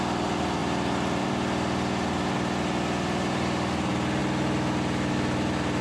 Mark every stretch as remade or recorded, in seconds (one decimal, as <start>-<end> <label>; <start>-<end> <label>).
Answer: 0.0-5.8 recorded